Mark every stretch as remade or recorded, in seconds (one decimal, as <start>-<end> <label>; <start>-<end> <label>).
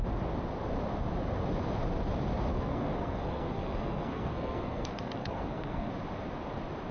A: 0.0-2.5 recorded; 2.5-5.9 remade; 5.9-6.9 recorded